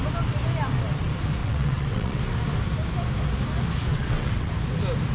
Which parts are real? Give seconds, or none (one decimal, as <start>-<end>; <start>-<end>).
0.0-1.4; 2.2-3.9; 4.5-5.1